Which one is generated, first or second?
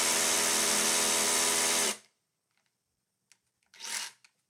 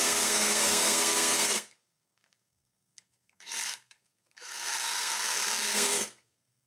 second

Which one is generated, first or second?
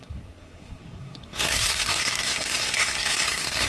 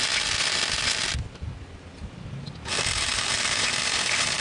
first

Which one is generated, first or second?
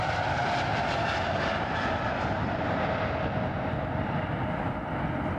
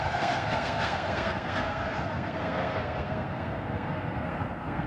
second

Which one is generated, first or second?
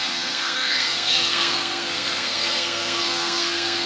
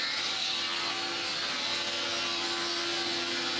first